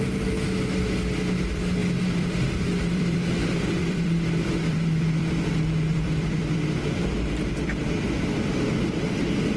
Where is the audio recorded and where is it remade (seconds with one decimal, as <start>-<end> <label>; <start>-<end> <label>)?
0.0-1.8 recorded; 1.8-6.8 remade; 6.8-9.6 recorded